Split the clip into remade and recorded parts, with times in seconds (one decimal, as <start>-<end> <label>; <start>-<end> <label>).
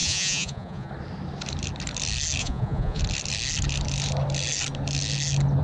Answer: 0.0-0.9 remade; 0.9-2.4 recorded; 2.4-3.0 remade; 3.0-5.6 recorded